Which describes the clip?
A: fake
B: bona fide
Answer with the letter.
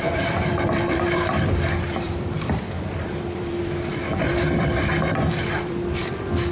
A